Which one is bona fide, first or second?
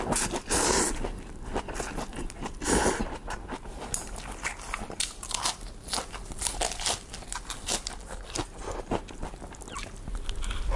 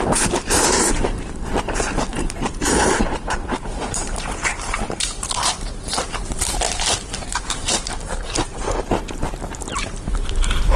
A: first